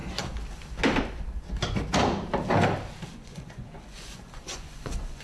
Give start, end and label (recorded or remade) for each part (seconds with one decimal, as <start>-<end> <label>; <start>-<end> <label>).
0.0-3.1 recorded; 3.1-5.2 remade